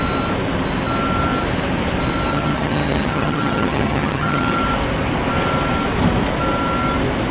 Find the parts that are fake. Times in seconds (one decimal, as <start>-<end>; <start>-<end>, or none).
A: 2.3-4.6